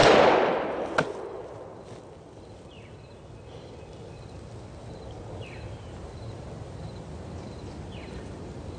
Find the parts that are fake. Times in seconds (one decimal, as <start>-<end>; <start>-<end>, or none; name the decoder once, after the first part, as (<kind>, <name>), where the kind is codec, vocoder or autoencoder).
none